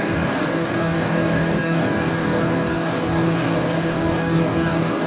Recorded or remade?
remade